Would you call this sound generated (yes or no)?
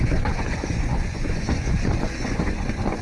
yes